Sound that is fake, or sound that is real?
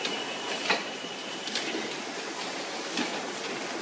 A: real